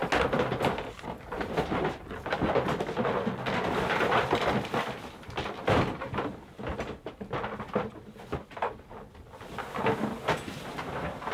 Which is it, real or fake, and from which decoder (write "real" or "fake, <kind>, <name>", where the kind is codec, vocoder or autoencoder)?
real